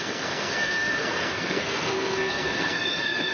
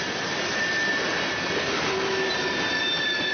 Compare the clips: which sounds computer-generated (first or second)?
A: first